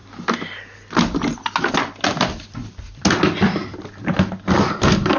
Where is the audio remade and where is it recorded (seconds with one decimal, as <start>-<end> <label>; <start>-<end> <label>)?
0.0-5.2 recorded